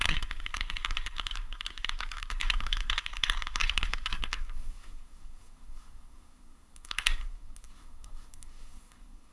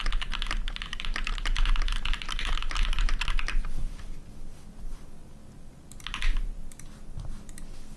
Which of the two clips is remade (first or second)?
first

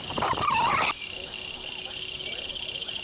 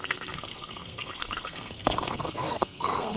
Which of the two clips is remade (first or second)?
second